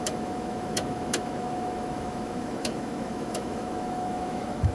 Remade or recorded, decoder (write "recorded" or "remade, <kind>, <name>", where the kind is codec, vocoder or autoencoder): remade, autoencoder, DAC-VAE